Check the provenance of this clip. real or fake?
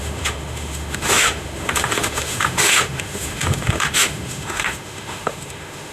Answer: fake